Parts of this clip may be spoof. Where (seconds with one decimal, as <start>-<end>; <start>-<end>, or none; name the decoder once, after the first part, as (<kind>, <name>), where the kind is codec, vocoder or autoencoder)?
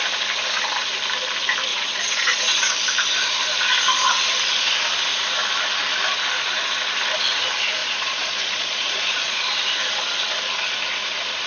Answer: 1.7-2.7 (vocoder, Vocos); 7.8-9.4